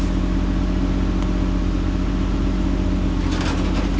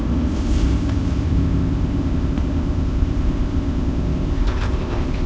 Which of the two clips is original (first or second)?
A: first